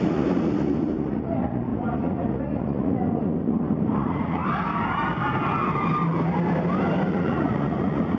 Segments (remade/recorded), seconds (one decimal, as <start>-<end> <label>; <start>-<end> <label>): 0.0-4.4 remade; 4.4-7.1 recorded; 7.1-8.2 remade